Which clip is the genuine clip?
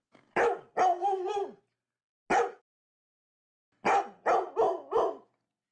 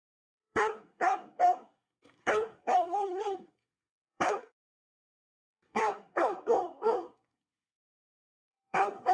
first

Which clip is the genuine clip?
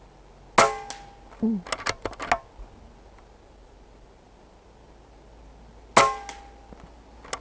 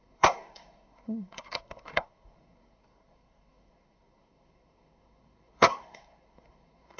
first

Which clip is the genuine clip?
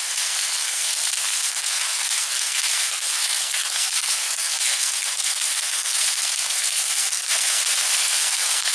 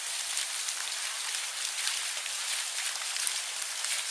second